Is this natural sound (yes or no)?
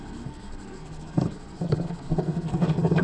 no